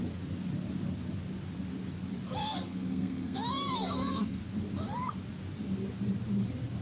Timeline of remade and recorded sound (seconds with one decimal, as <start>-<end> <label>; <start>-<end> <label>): 0.0-2.4 recorded; 2.4-4.4 remade; 4.4-6.8 recorded